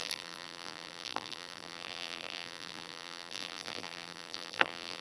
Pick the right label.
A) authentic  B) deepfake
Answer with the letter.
B